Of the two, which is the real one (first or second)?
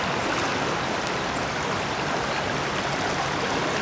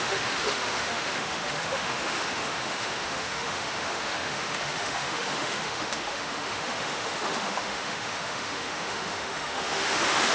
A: first